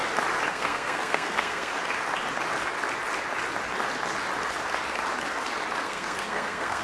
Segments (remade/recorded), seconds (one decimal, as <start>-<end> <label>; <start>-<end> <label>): 0.0-0.5 recorded; 0.5-1.7 remade; 1.7-5.8 recorded; 5.8-6.8 remade